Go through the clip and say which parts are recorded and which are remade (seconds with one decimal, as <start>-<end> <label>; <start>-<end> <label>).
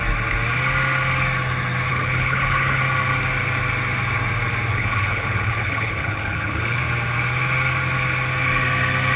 0.0-1.9 recorded; 1.9-2.8 remade; 2.8-4.7 recorded; 4.7-6.8 remade; 6.8-9.2 recorded